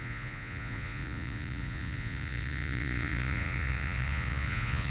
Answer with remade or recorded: remade